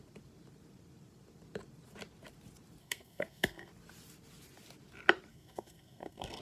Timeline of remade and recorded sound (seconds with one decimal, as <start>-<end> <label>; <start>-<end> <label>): 0.0-2.8 recorded; 2.8-3.7 remade; 3.7-5.3 recorded; 5.3-6.4 remade